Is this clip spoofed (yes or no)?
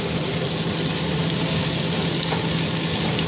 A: no